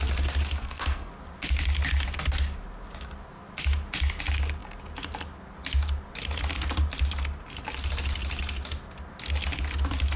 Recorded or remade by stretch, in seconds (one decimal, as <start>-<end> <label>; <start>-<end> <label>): 0.0-0.6 recorded; 0.6-1.1 remade; 1.1-10.2 recorded